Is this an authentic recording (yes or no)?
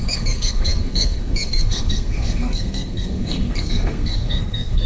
no